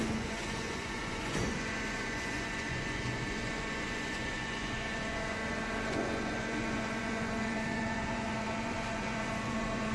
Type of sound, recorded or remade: remade